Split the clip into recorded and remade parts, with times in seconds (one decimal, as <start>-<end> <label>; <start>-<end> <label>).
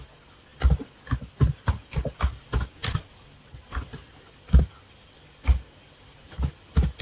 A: 0.0-7.0 recorded